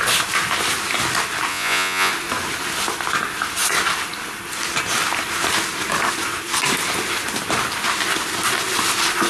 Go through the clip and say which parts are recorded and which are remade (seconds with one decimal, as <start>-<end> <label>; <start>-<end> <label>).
0.0-1.5 recorded; 1.5-2.1 remade; 2.1-9.3 recorded